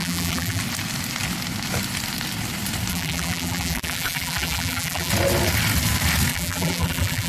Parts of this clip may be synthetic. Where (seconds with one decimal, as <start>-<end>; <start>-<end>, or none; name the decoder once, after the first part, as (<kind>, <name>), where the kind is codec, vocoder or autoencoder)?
0.0-0.6 (vocoder, BigVGAN v2); 2.9-5.1; 6.3-7.3